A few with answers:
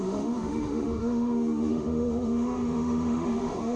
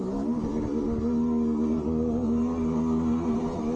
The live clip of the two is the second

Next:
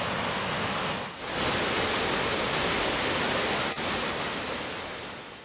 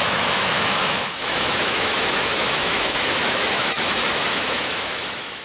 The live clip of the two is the first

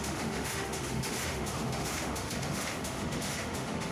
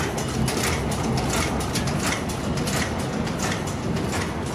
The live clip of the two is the second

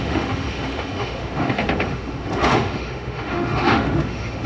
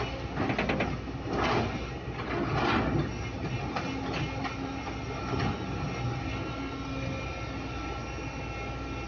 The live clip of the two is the second